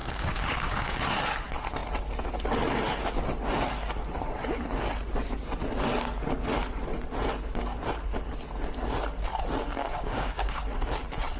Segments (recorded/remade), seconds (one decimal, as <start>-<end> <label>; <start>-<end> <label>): 0.0-1.0 remade; 1.0-9.8 recorded; 9.8-10.6 remade; 10.6-11.4 recorded